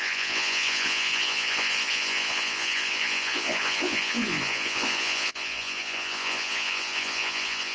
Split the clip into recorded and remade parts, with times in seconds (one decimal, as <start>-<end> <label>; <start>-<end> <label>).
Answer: 0.0-7.7 remade